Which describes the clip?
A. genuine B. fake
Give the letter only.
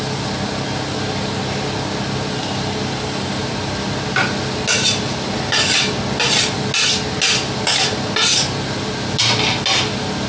A